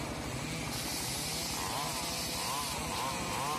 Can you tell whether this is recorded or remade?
recorded